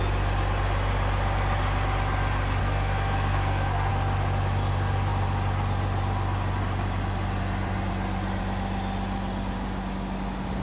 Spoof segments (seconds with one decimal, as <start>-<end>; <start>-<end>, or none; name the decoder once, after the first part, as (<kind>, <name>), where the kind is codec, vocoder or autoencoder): 2.6-3.9 (codec, SNAC)